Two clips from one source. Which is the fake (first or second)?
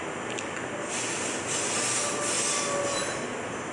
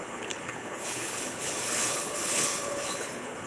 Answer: second